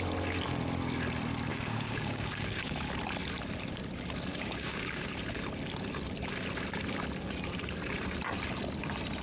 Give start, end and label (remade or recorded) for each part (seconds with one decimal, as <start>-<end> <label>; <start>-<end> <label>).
0.0-1.5 recorded; 1.5-2.7 remade; 2.7-4.3 recorded; 4.3-5.1 remade; 5.1-9.2 recorded